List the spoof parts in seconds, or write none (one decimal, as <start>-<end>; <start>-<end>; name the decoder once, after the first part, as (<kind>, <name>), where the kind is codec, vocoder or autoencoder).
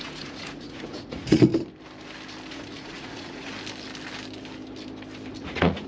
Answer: 0.0-1.5 (vocoder, Vocos); 2.5-3.5; 5.4-5.9